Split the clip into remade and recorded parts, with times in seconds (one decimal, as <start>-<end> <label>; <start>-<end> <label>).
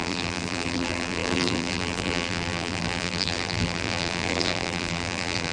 0.0-5.5 remade